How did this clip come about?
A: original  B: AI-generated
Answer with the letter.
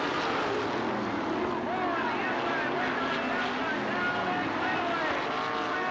A